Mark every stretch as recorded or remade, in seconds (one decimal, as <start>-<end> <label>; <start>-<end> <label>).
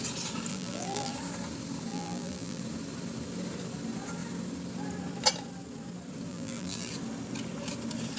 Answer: 0.0-0.5 recorded; 0.5-1.1 remade; 1.1-1.9 recorded; 1.9-2.6 remade; 2.6-6.3 recorded; 6.3-6.9 remade; 6.9-8.2 recorded